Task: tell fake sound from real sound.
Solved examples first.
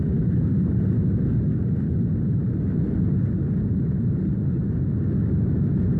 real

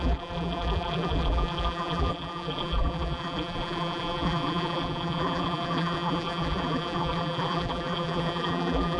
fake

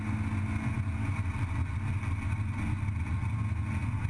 real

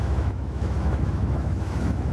fake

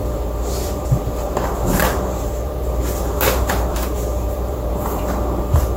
fake